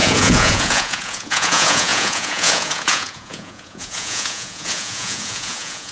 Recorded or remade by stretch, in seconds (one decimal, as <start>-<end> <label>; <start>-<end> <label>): 0.0-5.9 remade